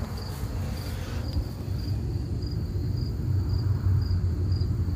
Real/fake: real